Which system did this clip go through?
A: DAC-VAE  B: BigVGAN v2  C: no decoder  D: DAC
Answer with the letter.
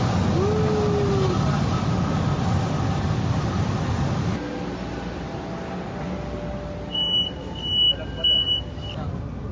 C